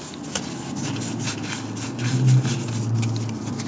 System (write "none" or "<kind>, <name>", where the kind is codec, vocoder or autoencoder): none